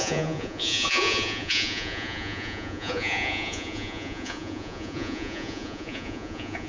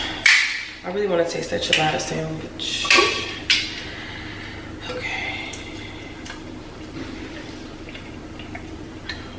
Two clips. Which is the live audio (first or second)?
second